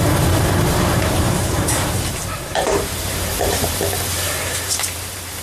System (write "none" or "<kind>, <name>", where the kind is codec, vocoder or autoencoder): vocoder, BigVGAN v2